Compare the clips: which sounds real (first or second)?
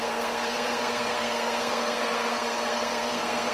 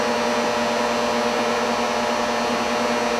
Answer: second